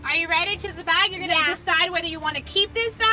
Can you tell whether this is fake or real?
real